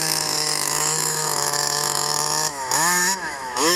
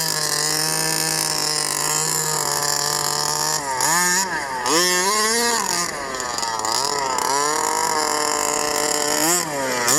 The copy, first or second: first